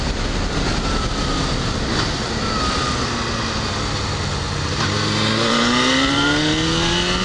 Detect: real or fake real